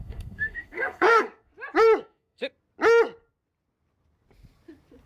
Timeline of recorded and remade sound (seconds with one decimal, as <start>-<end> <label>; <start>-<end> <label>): 0.0-1.5 remade; 1.5-2.0 recorded; 2.0-2.4 remade; 2.4-5.1 recorded